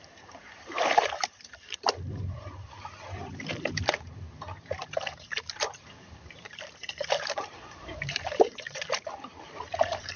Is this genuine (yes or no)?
no